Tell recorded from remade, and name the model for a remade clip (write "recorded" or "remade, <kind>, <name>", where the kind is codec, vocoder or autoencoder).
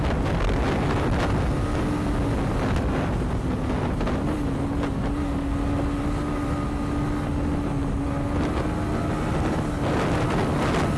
recorded